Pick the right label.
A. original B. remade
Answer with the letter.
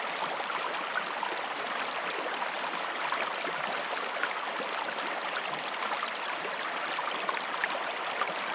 A